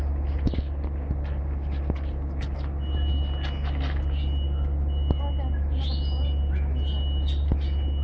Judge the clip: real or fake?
real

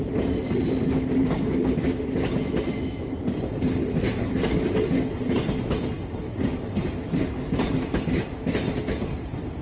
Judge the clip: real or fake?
real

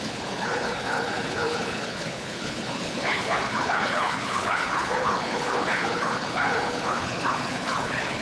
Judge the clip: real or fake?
fake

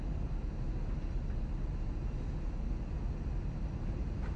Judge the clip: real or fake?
real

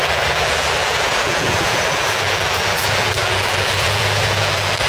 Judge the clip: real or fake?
fake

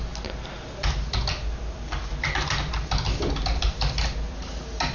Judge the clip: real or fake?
real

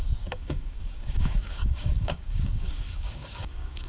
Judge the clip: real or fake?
fake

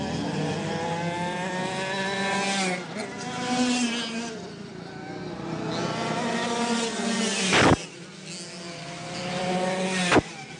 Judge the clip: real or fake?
real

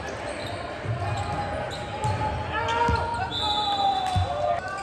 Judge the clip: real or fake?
real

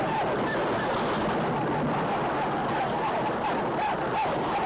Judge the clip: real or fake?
real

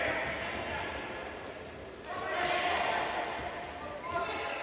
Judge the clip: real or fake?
real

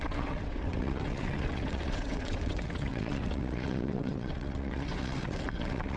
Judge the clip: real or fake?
fake